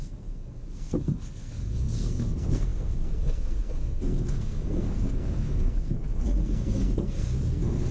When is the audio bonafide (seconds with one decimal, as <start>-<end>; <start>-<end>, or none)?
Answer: none